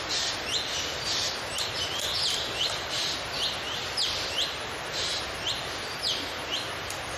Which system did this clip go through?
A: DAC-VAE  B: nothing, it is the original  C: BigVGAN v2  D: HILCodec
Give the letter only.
B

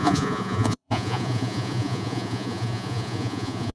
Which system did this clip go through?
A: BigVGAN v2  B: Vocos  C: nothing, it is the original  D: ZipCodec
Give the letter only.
B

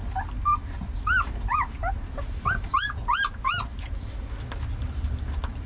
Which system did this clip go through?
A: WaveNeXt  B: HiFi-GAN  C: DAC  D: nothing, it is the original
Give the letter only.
D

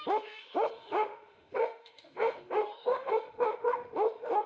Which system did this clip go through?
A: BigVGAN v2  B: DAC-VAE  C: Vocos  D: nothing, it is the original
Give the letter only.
B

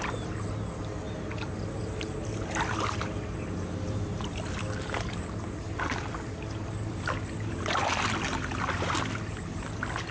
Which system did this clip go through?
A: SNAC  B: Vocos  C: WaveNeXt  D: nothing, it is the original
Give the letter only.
D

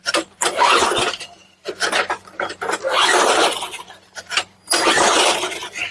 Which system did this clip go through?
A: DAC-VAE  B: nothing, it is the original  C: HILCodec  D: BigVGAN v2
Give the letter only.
D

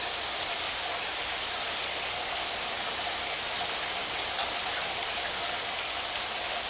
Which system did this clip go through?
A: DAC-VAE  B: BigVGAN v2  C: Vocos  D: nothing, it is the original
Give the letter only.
D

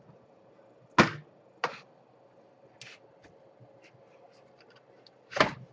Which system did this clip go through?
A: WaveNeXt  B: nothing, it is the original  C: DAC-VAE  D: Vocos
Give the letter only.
B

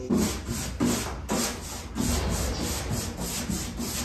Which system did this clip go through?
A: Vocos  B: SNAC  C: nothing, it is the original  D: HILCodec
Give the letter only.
C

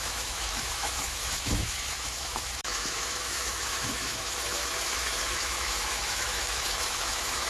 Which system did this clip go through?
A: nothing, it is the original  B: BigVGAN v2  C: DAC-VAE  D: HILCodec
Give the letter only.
C